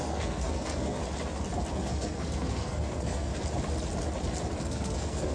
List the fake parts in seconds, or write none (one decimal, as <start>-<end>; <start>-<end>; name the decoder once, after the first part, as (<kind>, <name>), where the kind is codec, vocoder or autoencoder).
0.0-1.0 (codec, SNAC); 1.7-3.3; 4.6-5.3